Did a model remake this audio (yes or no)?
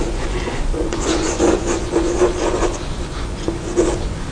yes